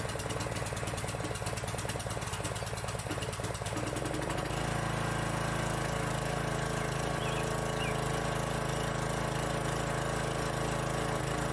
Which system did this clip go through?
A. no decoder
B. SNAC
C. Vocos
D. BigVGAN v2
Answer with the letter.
A